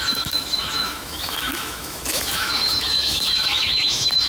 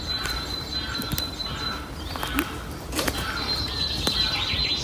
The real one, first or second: second